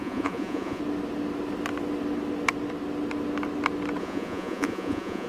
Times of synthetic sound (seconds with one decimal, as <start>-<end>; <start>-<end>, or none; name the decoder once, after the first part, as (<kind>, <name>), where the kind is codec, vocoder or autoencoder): 0.0-0.8 (vocoder, Vocos); 4.0-5.3